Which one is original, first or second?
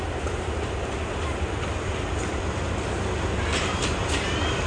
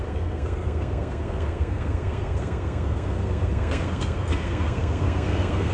first